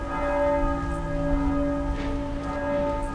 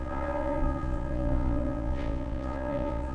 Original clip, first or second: first